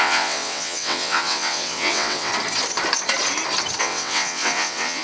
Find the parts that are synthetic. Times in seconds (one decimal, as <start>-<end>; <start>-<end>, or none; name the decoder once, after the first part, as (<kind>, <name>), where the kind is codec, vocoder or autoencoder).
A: 0.0-2.3 (vocoder, WaveNeXt); 3.8-5.0